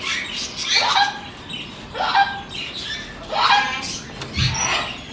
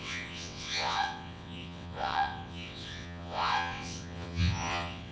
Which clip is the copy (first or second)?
second